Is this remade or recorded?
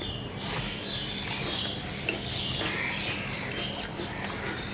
recorded